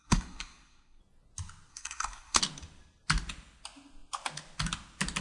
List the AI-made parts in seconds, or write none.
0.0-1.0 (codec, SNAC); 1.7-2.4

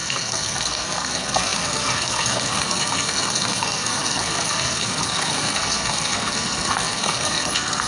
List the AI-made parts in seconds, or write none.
0.0-7.9 (codec, SNAC)